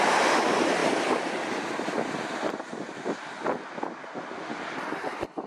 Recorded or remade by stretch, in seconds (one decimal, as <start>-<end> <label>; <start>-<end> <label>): 0.0-5.5 recorded